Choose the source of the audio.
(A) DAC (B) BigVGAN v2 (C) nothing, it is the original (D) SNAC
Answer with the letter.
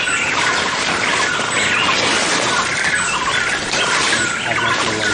C